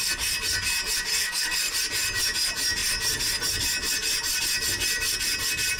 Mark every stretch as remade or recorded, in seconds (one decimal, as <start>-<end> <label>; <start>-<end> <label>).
0.0-1.1 recorded; 1.1-1.7 remade; 1.7-5.8 recorded